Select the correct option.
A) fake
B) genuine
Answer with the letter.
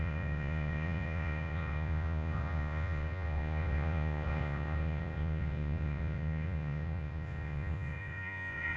A